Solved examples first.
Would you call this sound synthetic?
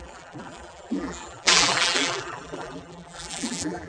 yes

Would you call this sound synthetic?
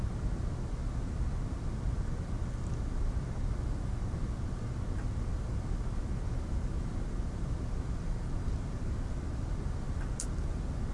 no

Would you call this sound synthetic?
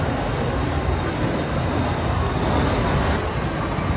no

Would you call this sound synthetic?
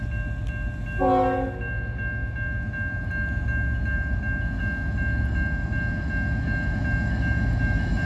no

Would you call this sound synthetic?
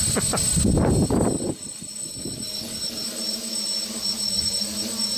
no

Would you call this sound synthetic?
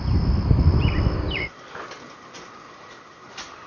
yes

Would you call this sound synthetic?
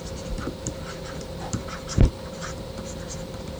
yes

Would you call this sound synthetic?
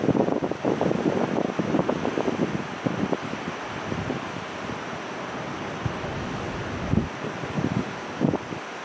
no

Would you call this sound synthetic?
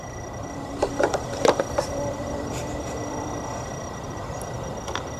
yes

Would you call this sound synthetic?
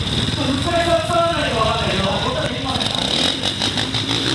yes